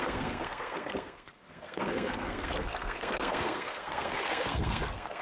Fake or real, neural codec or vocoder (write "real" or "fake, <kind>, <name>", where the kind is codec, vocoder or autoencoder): fake, codec, SNAC